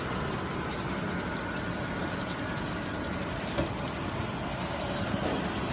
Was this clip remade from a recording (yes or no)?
no